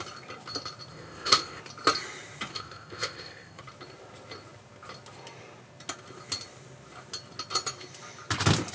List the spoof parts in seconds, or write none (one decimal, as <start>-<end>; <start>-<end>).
0.9-1.6; 2.5-3.6